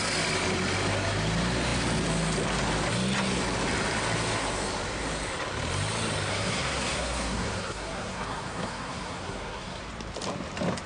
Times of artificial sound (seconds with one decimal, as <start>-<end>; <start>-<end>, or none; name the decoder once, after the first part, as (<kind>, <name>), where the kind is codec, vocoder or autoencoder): 6.3-9.8 (codec, SNAC)